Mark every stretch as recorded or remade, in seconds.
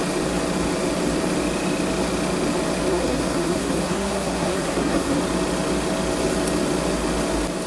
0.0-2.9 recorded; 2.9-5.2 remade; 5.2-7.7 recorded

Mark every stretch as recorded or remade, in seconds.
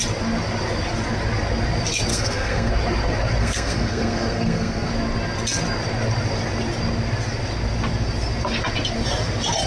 0.0-2.1 recorded; 2.1-2.7 remade; 2.7-3.4 recorded; 3.4-4.9 remade; 4.9-9.7 recorded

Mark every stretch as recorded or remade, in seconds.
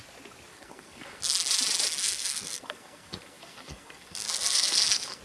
0.0-0.5 recorded; 0.5-1.2 remade; 1.2-2.0 recorded; 2.0-5.2 remade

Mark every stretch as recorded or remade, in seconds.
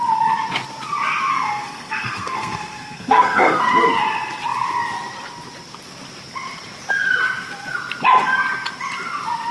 0.0-1.3 recorded; 1.3-3.6 remade; 3.6-9.5 recorded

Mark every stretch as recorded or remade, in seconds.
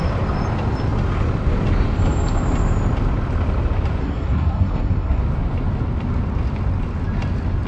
0.0-4.0 recorded; 4.0-5.2 remade; 5.2-7.7 recorded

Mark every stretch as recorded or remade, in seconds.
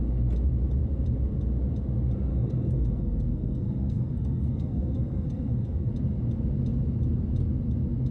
0.0-2.3 recorded; 2.3-5.9 remade; 5.9-8.1 recorded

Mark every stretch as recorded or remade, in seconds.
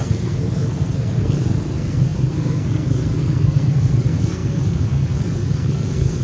0.0-6.2 remade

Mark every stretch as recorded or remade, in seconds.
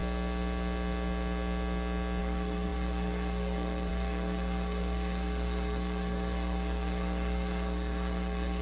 0.0-2.2 recorded; 2.2-8.6 remade